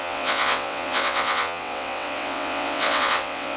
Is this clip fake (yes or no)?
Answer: yes